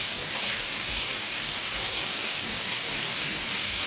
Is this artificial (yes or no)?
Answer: yes